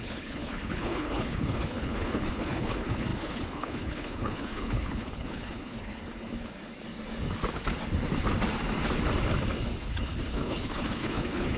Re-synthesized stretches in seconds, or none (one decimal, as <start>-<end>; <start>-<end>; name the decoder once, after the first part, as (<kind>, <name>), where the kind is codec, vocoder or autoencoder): 0.0-5.9 (codec, HILCodec); 9.8-11.6

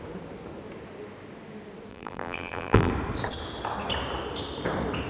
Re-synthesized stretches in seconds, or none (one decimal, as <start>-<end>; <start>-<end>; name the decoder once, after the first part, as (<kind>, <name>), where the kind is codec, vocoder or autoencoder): 1.9-2.9 (vocoder, BigVGAN v2)

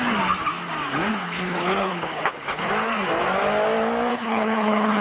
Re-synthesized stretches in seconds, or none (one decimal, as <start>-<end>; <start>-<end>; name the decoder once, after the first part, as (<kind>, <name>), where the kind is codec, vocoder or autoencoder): 1.1-2.7 (codec, HILCodec); 4.1-5.0